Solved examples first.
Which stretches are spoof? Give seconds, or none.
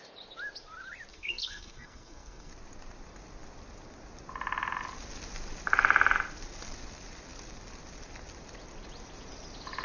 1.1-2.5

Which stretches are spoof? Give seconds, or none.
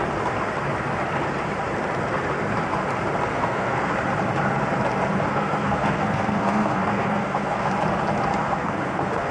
3.3-3.9; 5.3-7.7; 8.4-9.3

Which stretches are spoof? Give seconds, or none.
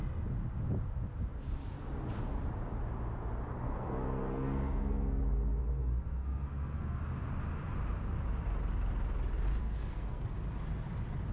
3.7-5.2; 5.8-7.0; 9.6-10.2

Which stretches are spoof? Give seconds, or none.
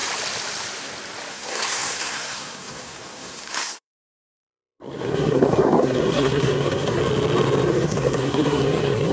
1.3-7.0; 7.7-9.1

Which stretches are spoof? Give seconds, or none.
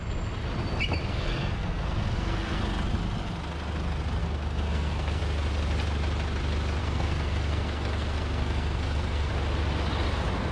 1.1-2.6; 4.2-5.2; 6.8-9.3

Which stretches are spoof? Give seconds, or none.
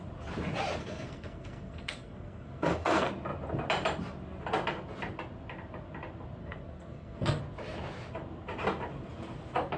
0.8-3.1; 6.4-7.4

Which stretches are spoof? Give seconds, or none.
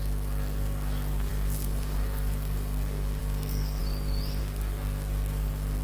0.0-3.8; 4.4-5.8